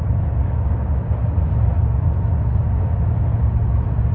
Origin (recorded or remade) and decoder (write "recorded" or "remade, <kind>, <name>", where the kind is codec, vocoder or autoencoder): recorded